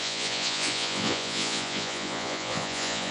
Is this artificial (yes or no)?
yes